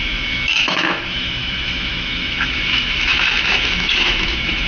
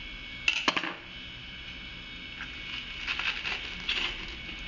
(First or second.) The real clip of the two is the second